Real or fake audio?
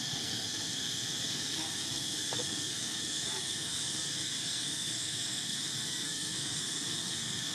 fake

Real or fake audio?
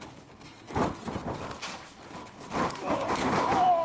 real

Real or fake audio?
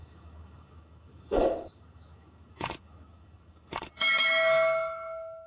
fake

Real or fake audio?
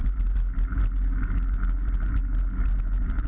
real